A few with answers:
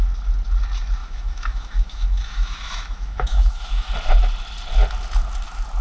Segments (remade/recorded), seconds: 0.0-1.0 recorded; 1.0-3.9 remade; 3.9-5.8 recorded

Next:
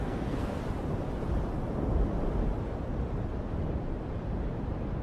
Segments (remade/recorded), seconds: 0.0-0.6 remade; 0.6-5.0 recorded